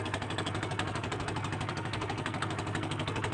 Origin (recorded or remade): remade